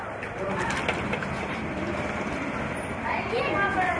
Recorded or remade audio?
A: recorded